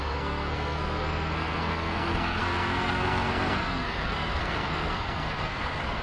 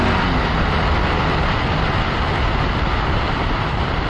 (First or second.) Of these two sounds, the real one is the second